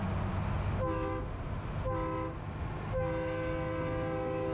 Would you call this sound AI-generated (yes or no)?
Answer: no